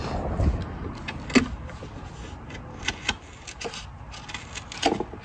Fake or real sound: real